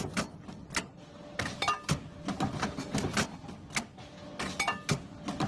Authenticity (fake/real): real